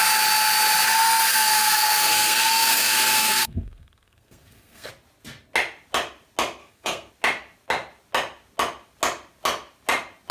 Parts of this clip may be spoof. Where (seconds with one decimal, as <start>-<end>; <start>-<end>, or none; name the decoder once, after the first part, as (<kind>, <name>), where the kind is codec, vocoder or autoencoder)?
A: 1.3-4.9 (codec, SNAC); 6.6-7.1